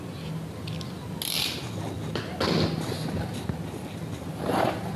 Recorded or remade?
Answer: recorded